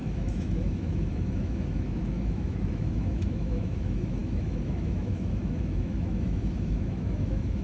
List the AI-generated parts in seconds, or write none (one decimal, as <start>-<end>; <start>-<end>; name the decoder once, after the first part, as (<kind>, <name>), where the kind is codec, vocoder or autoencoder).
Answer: 0.0-7.6 (autoencoder, DAC-VAE)